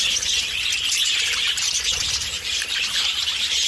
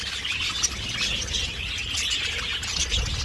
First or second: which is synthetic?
first